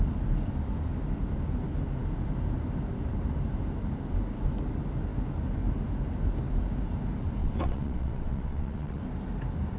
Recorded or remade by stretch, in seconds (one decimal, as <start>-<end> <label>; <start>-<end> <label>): 0.0-7.4 recorded; 7.4-9.0 remade; 9.0-9.8 recorded